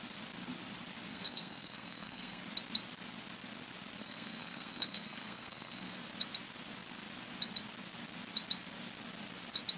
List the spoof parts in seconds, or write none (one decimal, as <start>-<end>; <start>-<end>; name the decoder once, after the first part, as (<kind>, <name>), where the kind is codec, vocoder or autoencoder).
1.1-2.4 (codec, SNAC); 4.0-6.0